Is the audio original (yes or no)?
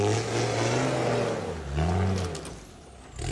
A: yes